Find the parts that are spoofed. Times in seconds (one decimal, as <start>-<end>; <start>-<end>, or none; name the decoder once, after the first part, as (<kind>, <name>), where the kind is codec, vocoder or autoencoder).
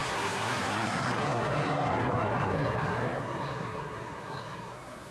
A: 0.0-5.1 (codec, SNAC)